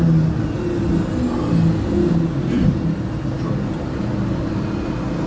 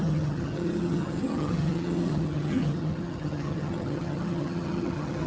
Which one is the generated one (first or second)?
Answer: second